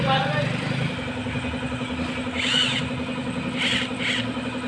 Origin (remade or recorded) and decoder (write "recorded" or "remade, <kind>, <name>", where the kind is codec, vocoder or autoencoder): recorded